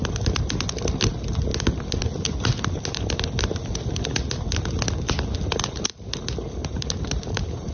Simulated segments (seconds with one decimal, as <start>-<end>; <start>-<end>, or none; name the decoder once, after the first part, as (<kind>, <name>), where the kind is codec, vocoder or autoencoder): 6.6-7.7 (vocoder, BigVGAN v2)